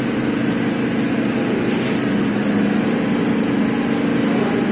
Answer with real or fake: real